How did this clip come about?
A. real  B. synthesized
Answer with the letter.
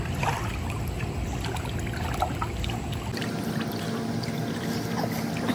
A